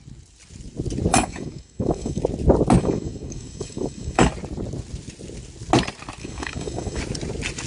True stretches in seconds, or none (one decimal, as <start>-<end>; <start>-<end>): 0.0-1.1; 2.2-2.8; 4.3-6.2; 7.0-7.7